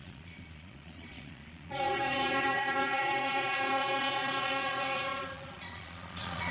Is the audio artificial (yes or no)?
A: yes